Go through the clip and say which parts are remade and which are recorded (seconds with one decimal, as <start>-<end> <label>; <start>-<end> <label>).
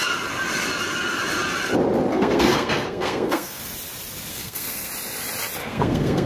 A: 0.0-2.1 recorded; 2.1-3.6 remade; 3.6-4.3 recorded; 4.3-4.9 remade; 4.9-5.6 recorded; 5.6-6.3 remade